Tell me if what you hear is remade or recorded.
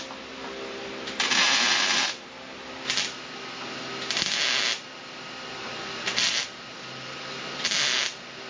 recorded